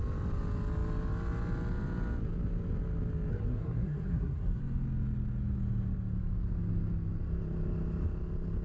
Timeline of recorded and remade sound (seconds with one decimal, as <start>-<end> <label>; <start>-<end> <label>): 0.0-3.3 recorded; 3.3-4.6 remade; 4.6-8.6 recorded